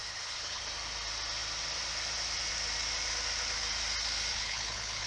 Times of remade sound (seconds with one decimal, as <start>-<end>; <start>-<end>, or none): 0.0-0.6; 4.3-5.1